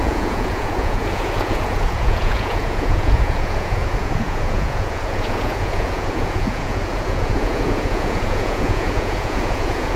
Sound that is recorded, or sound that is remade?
remade